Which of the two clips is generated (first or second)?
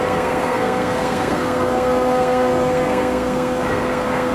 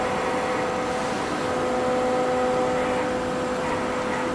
first